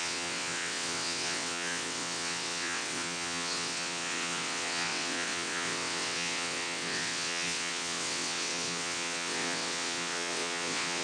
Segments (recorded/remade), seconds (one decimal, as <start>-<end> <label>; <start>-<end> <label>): 0.0-11.0 remade